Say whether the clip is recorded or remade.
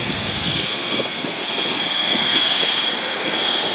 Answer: remade